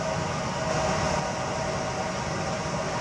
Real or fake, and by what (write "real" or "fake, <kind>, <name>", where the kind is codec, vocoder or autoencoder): real